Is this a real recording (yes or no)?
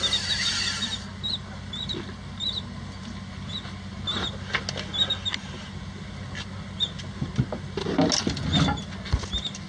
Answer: yes